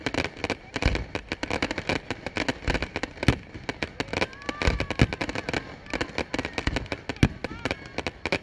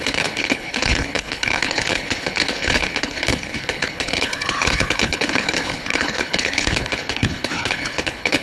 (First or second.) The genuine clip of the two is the first